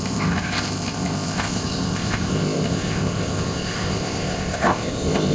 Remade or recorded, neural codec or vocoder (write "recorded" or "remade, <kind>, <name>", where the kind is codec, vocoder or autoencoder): remade, codec, ZipCodec